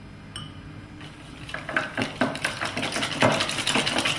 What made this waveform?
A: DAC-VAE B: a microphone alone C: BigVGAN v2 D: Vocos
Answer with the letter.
B